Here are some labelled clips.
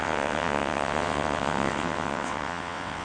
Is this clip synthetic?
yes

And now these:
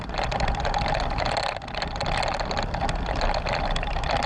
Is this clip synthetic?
no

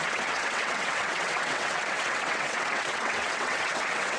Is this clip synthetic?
yes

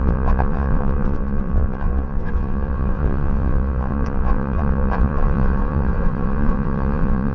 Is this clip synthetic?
yes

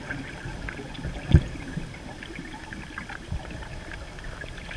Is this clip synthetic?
no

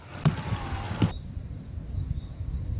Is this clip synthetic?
no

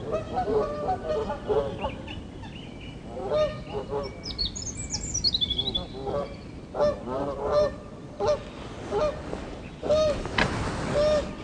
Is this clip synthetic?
no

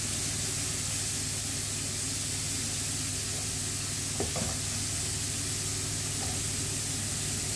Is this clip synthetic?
no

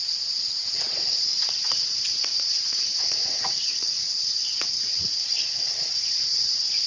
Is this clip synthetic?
yes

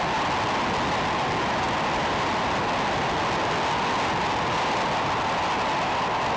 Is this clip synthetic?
no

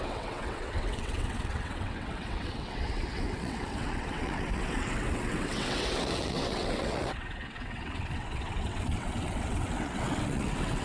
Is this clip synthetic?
yes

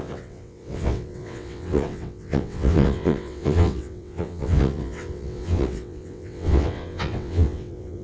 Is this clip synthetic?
yes